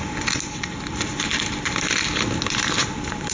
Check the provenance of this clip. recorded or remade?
recorded